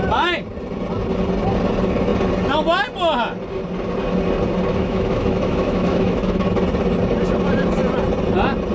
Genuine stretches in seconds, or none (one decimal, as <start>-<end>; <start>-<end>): 0.0-4.7; 6.5-8.7